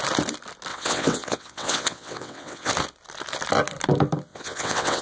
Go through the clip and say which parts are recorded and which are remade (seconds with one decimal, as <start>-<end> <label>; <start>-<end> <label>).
0.0-0.7 recorded; 0.7-2.7 remade; 2.7-4.3 recorded; 4.3-5.0 remade